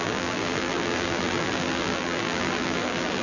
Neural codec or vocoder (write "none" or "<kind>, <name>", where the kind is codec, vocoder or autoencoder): vocoder, BigVGAN v2